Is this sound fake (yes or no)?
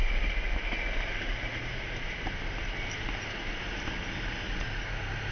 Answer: no